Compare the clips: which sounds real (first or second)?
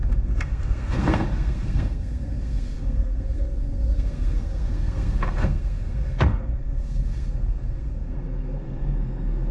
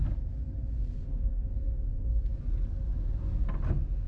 second